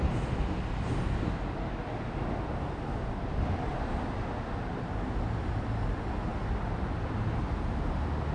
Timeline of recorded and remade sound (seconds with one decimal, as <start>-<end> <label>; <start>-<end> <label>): 0.0-8.3 recorded